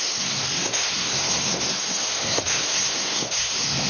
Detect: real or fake fake